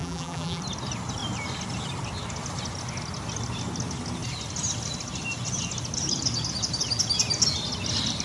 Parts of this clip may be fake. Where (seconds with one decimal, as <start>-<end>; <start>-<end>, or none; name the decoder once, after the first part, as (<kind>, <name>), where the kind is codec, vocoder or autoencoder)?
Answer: 0.0-0.6 (vocoder, BigVGAN v2)